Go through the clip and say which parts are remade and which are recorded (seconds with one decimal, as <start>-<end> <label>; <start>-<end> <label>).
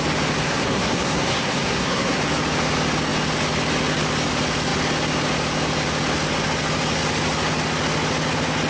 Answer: 0.0-0.4 recorded; 0.4-2.2 remade; 2.2-8.7 recorded